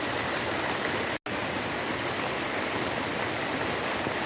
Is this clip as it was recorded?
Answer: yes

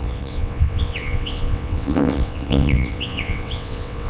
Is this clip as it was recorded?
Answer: no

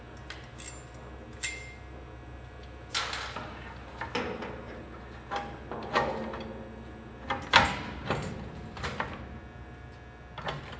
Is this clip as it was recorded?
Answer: yes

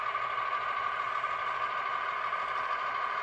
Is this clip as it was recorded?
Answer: yes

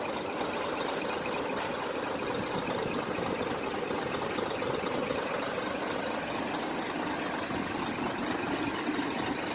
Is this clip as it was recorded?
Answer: yes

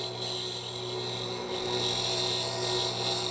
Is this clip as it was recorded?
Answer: yes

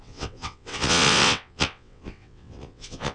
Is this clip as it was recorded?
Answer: no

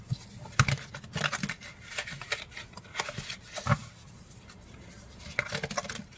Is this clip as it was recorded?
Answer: yes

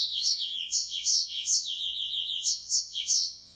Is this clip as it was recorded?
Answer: no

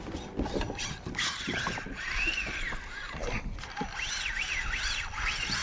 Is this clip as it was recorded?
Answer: yes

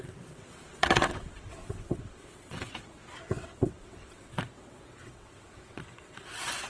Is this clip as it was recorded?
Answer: no